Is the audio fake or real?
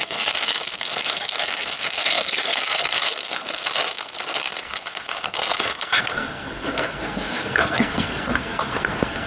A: fake